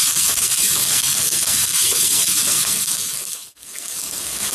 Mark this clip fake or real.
fake